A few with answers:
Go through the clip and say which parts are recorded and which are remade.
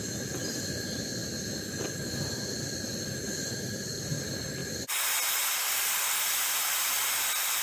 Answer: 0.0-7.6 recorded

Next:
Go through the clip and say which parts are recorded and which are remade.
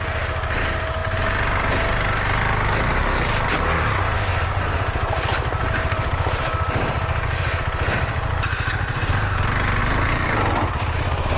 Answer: 0.0-5.6 recorded; 5.6-7.0 remade; 7.0-9.8 recorded; 9.8-10.7 remade; 10.7-11.4 recorded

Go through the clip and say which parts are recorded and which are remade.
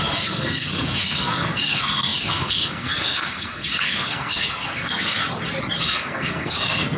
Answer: 0.0-5.2 remade; 5.2-5.8 recorded; 5.8-7.0 remade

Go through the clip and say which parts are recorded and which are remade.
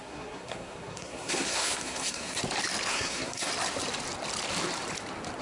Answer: 0.0-2.4 remade; 2.4-2.9 recorded; 2.9-3.5 remade; 3.5-5.4 recorded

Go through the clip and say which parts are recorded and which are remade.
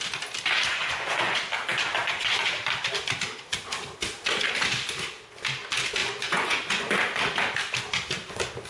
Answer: 0.0-0.7 recorded; 0.7-1.4 remade; 1.4-6.0 recorded; 6.0-6.9 remade; 6.9-8.7 recorded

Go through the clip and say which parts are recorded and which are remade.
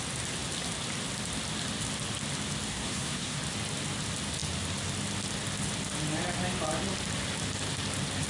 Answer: 0.0-2.7 recorded; 2.7-3.4 remade; 3.4-8.3 recorded